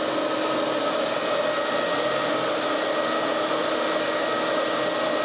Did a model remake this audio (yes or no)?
no